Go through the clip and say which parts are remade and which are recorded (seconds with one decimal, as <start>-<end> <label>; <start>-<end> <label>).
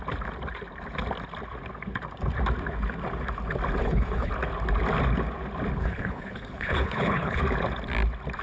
0.0-3.8 recorded; 3.8-4.3 remade; 4.3-5.8 recorded; 5.8-7.4 remade; 7.4-8.4 recorded